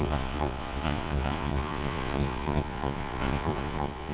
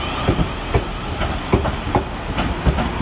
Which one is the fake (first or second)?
first